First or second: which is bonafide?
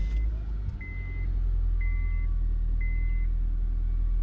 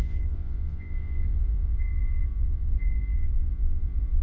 first